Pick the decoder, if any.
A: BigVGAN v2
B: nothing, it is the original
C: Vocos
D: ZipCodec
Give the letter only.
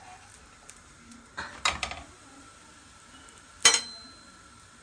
B